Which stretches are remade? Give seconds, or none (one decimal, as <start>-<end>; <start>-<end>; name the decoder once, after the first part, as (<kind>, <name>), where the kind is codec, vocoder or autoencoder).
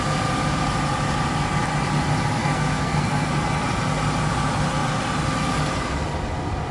2.4-3.3 (codec, SNAC)